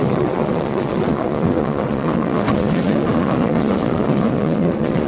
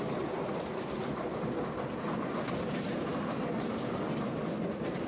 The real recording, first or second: second